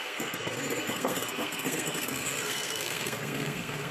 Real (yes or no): no